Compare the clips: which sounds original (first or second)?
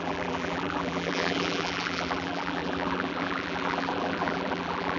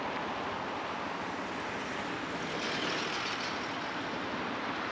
second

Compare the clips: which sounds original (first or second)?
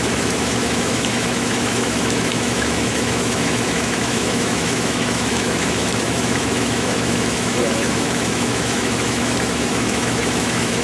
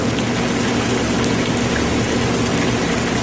second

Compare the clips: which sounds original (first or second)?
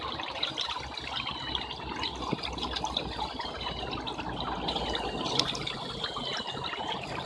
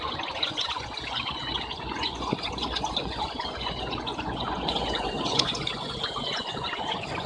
first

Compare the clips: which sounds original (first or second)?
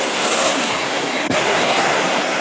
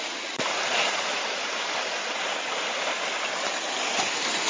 second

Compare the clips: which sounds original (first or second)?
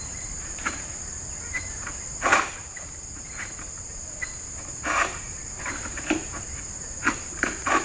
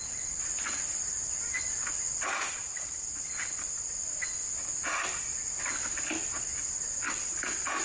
second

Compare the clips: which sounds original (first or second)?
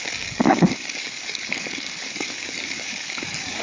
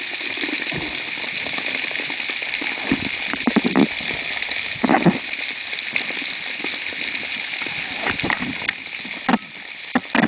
second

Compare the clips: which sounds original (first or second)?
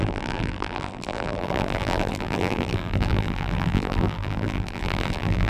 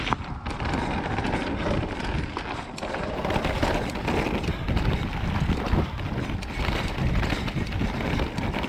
second